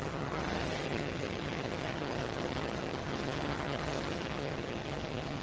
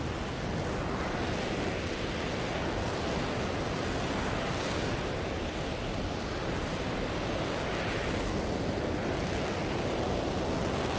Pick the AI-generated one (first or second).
first